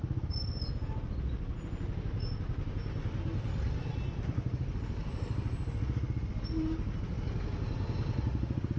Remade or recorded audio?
recorded